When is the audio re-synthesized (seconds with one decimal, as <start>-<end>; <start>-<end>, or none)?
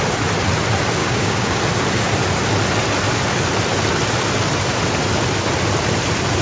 1.0-1.6